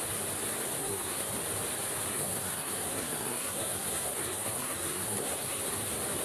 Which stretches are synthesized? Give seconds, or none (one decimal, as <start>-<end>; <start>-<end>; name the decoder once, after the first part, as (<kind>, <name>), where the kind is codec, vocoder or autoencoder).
0.8-1.3 (codec, SNAC); 2.1-5.6